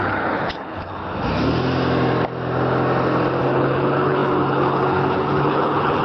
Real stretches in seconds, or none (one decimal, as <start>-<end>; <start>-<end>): 1.0-3.4